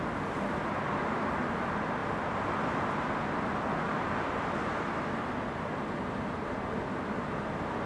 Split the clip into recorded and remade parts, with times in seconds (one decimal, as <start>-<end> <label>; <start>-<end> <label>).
0.0-7.9 recorded